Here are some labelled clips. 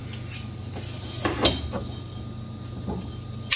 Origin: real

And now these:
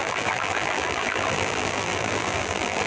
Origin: fake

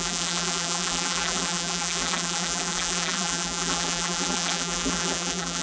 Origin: fake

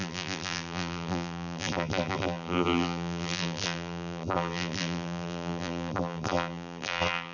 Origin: fake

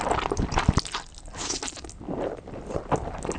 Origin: real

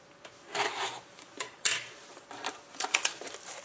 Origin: fake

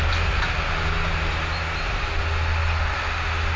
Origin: real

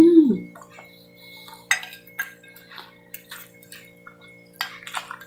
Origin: real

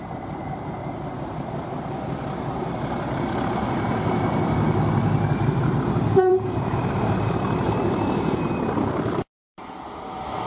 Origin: fake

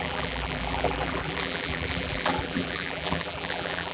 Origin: fake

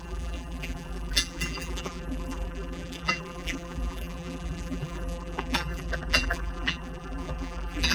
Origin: fake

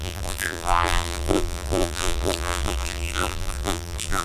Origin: fake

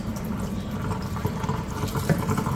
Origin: fake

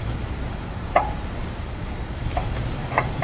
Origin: fake